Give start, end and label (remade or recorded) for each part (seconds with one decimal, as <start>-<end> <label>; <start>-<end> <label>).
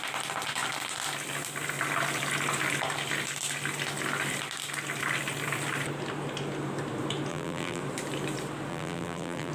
0.0-7.3 recorded; 7.3-7.8 remade; 7.8-8.7 recorded; 8.7-9.5 remade